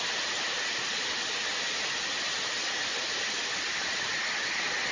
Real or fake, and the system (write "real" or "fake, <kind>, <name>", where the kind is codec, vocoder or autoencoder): real